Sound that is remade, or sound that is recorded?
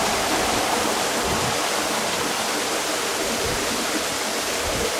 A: remade